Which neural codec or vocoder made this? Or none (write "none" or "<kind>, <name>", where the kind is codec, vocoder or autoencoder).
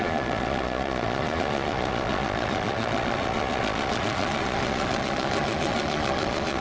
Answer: vocoder, Vocos